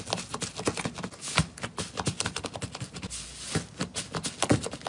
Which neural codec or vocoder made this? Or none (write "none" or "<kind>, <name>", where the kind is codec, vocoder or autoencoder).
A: none